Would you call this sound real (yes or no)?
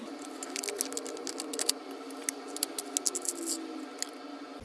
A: yes